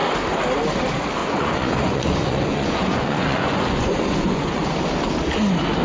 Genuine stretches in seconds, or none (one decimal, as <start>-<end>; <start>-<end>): 0.0-1.2; 4.7-5.8